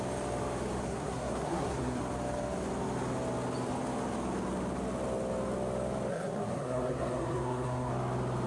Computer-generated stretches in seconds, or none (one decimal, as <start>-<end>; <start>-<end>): 0.8-2.0; 6.1-7.9